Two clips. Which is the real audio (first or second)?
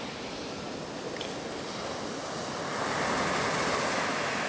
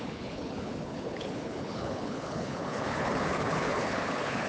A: first